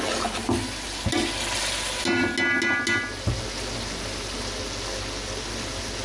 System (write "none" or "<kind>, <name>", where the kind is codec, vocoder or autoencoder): none